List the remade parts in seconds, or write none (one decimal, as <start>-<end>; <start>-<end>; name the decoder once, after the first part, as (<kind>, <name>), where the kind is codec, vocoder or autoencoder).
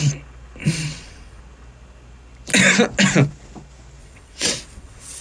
0.6-1.4 (vocoder, WaveNeXt); 4.0-5.2